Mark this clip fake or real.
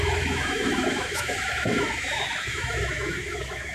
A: fake